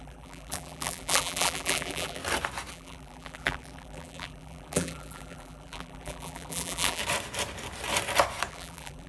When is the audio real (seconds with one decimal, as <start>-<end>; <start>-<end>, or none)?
2.2-2.7; 7.0-8.5